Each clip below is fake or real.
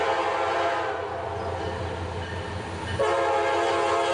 real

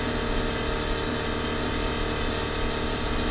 real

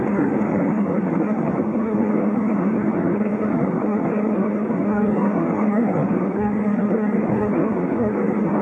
fake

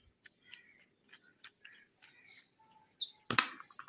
real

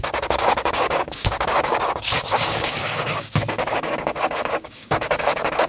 fake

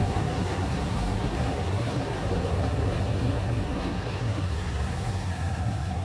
fake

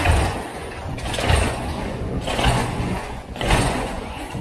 fake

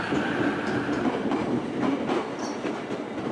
fake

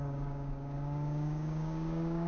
fake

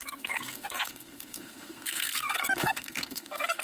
fake